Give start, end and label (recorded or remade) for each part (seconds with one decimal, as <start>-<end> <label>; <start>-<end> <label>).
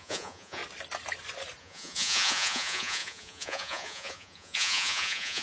0.0-0.6 remade; 0.6-1.6 recorded; 1.6-5.4 remade